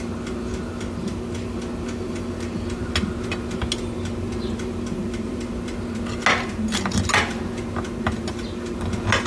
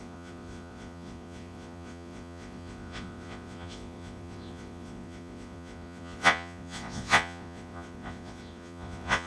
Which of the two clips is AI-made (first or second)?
second